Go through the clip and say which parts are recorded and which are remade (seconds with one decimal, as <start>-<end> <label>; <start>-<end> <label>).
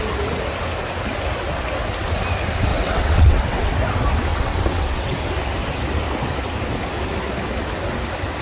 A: 0.0-2.7 recorded; 2.7-3.7 remade; 3.7-4.3 recorded; 4.3-5.1 remade; 5.1-8.4 recorded